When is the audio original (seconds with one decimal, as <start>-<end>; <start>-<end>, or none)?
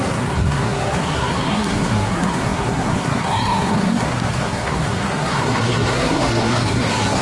none